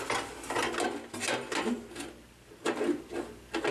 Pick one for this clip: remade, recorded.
recorded